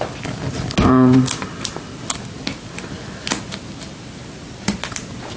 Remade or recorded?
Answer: recorded